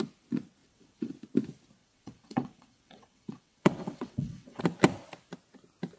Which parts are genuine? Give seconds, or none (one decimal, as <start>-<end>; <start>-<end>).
0.0-0.6; 1.1-1.8; 4.6-6.0